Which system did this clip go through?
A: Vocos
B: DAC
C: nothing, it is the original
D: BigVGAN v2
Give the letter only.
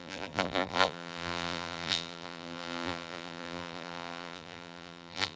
D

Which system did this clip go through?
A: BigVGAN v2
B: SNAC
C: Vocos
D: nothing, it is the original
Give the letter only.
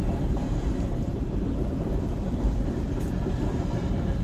A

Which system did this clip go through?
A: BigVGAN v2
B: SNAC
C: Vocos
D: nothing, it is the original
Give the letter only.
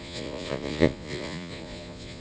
C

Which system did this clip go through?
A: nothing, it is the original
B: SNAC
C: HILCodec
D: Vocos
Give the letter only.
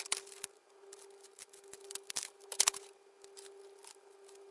A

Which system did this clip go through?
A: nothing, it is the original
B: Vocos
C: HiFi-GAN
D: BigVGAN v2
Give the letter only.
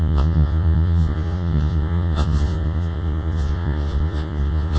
B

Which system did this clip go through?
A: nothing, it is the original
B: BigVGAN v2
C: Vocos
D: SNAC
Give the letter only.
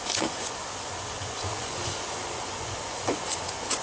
C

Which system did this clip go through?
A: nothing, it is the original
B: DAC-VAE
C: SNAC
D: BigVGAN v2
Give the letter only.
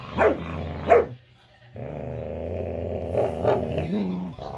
A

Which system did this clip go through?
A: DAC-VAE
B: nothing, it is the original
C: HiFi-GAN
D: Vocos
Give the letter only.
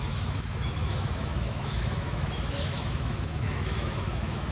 A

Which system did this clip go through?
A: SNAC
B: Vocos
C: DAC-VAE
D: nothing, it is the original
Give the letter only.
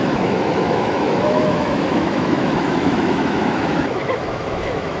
C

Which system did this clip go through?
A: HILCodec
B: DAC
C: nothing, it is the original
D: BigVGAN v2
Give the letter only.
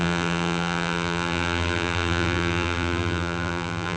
D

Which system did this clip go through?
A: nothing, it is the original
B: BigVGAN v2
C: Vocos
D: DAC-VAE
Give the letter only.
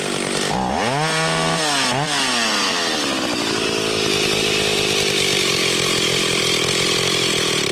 A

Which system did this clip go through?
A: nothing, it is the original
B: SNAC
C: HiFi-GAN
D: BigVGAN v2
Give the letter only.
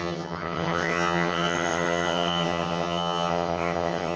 C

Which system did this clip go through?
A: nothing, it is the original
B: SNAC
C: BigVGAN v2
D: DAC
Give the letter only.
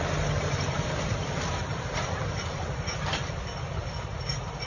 C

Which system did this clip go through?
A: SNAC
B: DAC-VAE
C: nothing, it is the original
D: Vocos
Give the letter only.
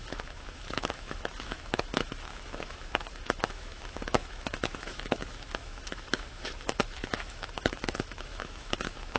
B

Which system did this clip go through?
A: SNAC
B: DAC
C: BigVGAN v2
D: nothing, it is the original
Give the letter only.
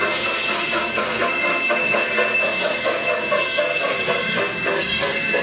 A